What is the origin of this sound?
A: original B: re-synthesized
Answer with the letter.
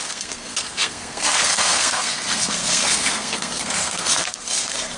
B